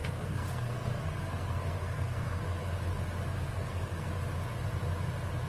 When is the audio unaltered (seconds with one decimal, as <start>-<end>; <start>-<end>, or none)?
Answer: 2.4-3.3; 4.1-5.5